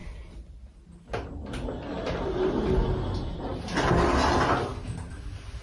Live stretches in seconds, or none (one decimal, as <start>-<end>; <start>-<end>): 0.0-5.6